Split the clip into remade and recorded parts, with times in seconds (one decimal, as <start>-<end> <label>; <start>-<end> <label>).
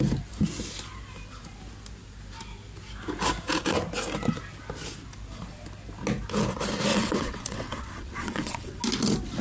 0.0-6.9 recorded; 6.9-8.8 remade; 8.8-9.4 recorded